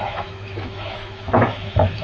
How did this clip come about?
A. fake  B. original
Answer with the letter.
A